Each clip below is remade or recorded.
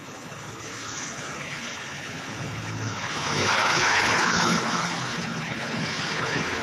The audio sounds remade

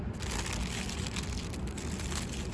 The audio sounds recorded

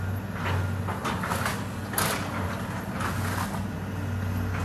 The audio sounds recorded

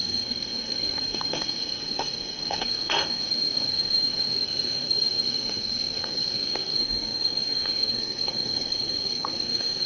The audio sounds remade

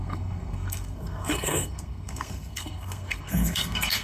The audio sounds remade